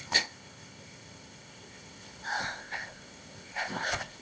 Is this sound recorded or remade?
remade